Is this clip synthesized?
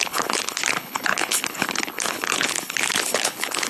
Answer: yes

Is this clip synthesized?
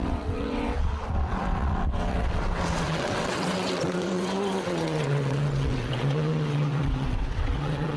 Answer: yes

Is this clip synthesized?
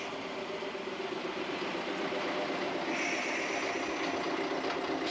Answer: no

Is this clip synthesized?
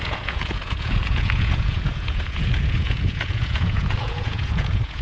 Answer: yes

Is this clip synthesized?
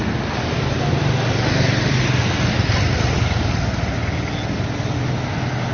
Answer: no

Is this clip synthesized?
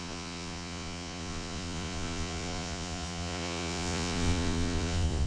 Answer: yes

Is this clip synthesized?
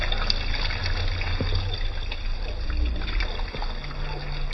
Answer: no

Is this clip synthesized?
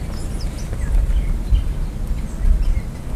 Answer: no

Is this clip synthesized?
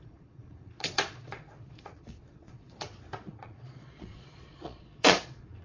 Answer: yes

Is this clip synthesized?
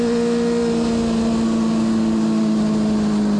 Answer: no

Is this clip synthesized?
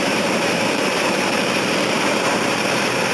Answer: yes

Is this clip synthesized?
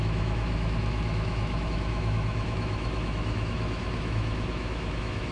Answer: yes